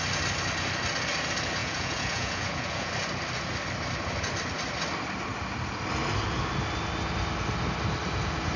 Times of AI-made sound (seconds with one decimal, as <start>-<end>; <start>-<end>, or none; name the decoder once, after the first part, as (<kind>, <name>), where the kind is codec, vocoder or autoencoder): 1.6-2.9 (vocoder, Vocos)